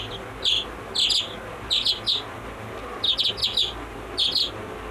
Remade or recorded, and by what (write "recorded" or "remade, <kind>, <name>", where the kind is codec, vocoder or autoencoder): recorded